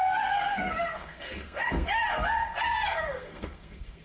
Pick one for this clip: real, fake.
fake